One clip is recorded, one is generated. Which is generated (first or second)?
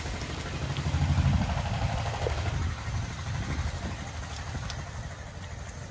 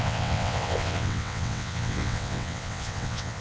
second